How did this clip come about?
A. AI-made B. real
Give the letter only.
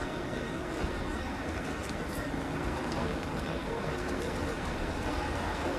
A